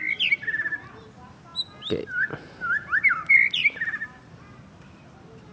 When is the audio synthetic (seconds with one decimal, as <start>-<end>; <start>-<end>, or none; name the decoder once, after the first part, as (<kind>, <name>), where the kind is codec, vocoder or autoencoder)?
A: none

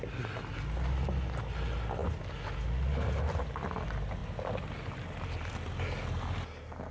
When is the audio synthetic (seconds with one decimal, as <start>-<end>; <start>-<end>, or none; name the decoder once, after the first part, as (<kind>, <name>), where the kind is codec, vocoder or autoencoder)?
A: none

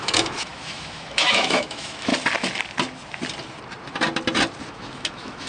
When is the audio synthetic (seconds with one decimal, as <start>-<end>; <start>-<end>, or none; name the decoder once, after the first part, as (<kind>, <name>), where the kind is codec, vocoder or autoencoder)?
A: 0.0-2.1 (autoencoder, DAC-VAE); 4.7-5.5

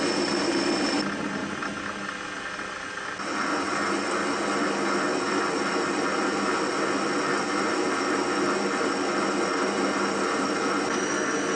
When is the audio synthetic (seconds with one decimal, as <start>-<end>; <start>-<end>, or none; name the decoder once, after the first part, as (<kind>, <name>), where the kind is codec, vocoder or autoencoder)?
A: 5.1-6.6 (vocoder, BigVGAN v2)

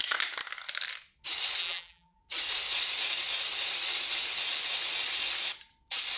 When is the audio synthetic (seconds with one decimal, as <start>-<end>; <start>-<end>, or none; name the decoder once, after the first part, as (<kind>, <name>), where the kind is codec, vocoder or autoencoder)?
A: 1.6-2.2 (vocoder, BigVGAN v2)

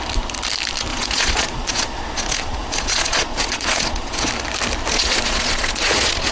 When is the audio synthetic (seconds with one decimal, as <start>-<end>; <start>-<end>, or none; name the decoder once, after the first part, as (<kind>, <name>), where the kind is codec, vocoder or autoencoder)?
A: 0.9-4.3 (vocoder, Vocos); 4.9-6.3

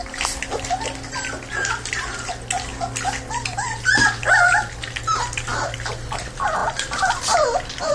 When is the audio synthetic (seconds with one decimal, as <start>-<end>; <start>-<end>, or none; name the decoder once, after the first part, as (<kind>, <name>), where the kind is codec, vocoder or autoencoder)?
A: none

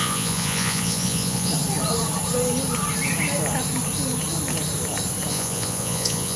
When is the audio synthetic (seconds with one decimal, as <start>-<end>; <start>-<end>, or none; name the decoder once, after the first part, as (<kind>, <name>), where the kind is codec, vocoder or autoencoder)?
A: 0.0-1.5 (vocoder, Vocos); 5.3-6.4